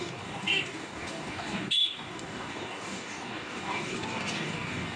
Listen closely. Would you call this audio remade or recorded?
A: remade